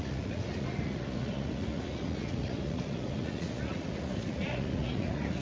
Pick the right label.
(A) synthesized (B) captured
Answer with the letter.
A